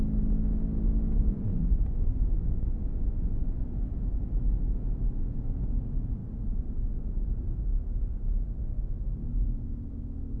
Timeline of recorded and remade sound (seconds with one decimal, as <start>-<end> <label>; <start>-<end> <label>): 0.0-1.2 recorded; 1.2-3.6 remade; 3.6-10.4 recorded